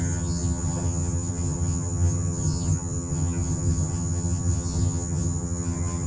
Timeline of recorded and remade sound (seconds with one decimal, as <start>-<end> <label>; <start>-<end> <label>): 0.0-6.1 remade